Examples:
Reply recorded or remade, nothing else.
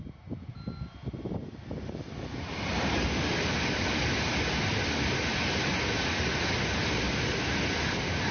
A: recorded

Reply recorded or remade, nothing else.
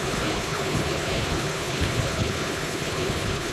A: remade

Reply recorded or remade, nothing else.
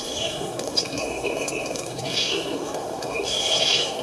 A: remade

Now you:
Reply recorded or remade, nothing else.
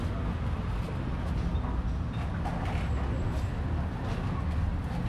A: recorded